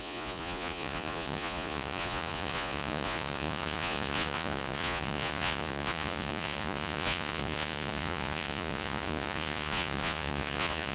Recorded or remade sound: remade